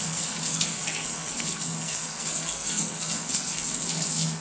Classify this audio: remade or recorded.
remade